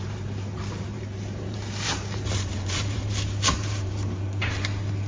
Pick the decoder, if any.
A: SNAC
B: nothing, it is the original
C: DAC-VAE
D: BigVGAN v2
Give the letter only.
D